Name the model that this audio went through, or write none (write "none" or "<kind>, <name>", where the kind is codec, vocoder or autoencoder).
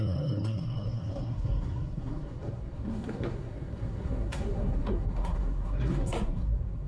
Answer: codec, SNAC